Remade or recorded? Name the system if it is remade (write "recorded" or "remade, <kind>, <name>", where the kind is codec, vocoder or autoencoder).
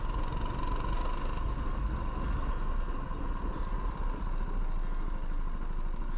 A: recorded